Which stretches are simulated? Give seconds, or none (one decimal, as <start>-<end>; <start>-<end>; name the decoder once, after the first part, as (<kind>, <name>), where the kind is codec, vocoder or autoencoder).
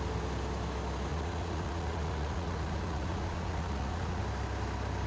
1.1-4.2 (vocoder, Vocos)